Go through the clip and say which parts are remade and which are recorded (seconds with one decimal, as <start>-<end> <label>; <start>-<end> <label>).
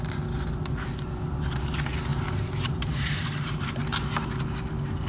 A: 0.0-2.1 recorded; 2.1-4.4 remade; 4.4-5.1 recorded